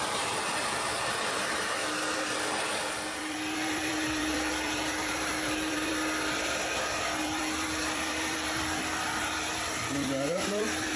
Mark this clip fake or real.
fake